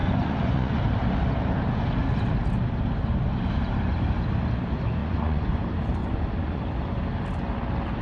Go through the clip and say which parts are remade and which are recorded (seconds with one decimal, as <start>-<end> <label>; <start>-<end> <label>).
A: 0.0-0.8 remade; 0.8-5.0 recorded; 5.0-5.6 remade; 5.6-6.0 recorded; 6.0-6.6 remade; 6.6-8.0 recorded